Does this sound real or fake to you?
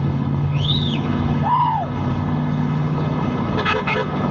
fake